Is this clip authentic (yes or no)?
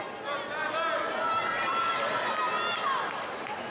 yes